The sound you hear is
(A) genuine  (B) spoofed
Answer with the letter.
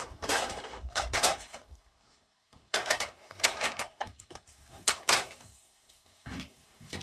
B